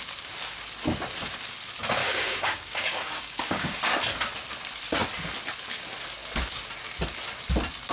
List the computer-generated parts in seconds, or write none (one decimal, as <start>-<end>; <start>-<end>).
2.0-3.8